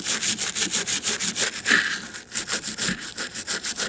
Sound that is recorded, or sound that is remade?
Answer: remade